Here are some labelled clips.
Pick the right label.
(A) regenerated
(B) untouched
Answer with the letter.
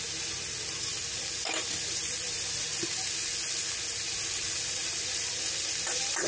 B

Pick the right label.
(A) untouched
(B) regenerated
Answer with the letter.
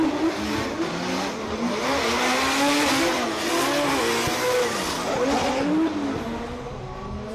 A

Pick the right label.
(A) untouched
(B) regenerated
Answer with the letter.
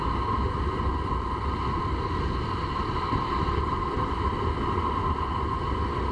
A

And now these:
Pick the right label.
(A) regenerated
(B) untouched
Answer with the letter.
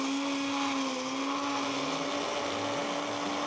B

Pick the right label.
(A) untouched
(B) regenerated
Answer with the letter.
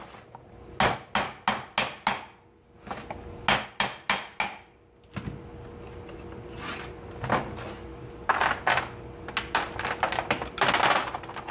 A